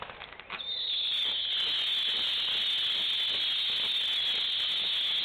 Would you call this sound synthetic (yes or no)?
no